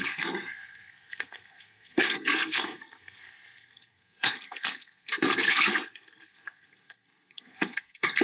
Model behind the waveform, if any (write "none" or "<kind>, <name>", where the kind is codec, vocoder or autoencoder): codec, SNAC